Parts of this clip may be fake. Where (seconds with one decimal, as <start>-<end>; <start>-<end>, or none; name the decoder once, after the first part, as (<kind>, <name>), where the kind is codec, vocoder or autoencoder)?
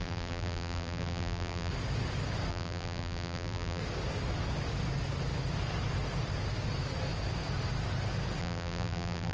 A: 0.0-1.7 (vocoder, BigVGAN v2); 2.5-3.8; 8.4-9.3